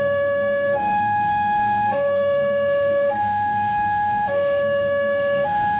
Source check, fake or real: fake